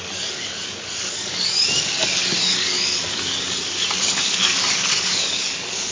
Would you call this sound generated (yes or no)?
yes